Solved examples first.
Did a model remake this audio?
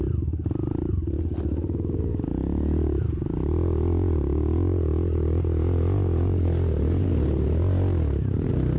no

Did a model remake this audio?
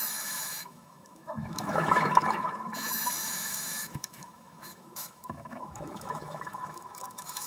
yes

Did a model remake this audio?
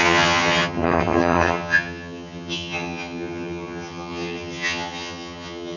yes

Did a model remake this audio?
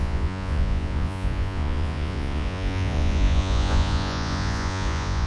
yes